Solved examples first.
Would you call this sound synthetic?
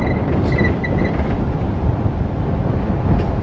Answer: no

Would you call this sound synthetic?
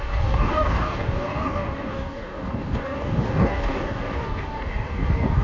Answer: yes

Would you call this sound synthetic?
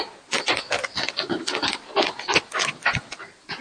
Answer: no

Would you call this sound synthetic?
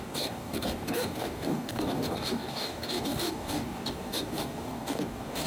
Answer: yes